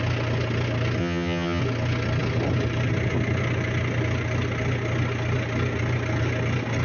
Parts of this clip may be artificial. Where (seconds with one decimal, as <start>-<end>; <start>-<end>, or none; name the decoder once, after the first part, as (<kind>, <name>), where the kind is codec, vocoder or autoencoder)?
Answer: 1.0-1.6 (vocoder, HiFi-GAN)

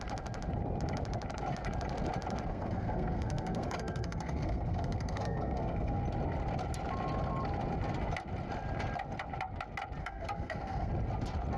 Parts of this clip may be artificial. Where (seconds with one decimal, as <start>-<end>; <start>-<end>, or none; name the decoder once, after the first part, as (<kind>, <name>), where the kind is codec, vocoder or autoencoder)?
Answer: 2.5-6.0 (codec, SNAC); 10.0-10.9

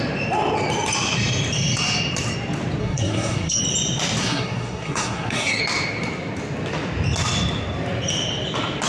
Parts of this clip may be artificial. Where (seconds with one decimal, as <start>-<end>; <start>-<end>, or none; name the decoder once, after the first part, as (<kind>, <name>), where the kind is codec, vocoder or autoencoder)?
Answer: 2.8-3.6 (codec, SNAC); 4.2-5.6

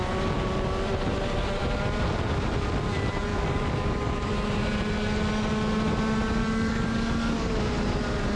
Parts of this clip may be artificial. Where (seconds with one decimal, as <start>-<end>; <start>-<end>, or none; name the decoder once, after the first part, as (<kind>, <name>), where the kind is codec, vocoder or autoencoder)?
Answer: 3.3-4.3 (codec, DAC); 6.4-7.5